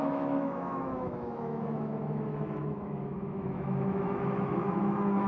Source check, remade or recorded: remade